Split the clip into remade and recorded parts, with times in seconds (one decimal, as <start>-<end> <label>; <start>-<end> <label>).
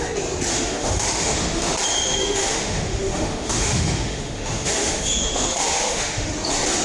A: 0.0-0.5 recorded; 0.5-1.7 remade; 1.7-2.2 recorded; 2.2-6.3 remade; 6.3-6.8 recorded